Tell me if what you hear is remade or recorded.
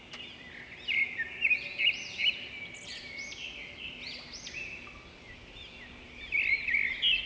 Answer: recorded